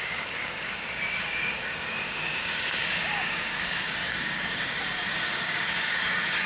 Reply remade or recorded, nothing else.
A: remade